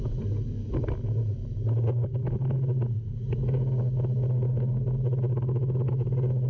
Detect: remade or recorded recorded